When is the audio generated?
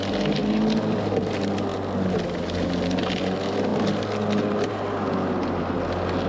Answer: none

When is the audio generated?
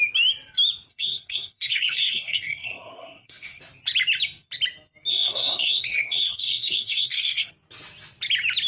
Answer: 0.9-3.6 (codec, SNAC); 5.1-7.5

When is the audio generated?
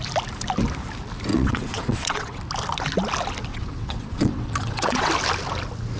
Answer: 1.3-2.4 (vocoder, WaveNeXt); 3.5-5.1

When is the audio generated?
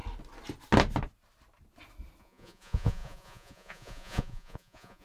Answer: 2.2-5.0 (vocoder, Vocos)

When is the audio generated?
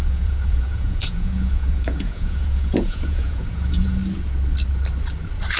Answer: 0.0-4.0 (vocoder, Vocos)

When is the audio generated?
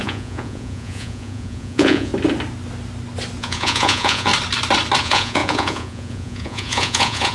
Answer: 0.0-2.1 (vocoder, Vocos); 3.4-4.3; 5.0-7.3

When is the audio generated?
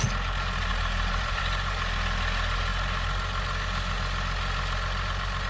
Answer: 0.7-1.4 (vocoder, BigVGAN v2)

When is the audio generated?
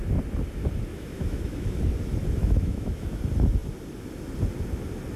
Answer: 0.9-1.8 (autoencoder, DAC-VAE); 2.4-3.2